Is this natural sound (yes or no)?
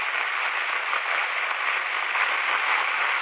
yes